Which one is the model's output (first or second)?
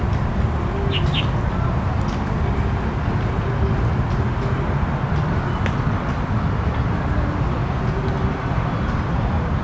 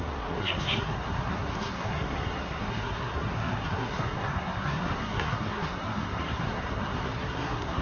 second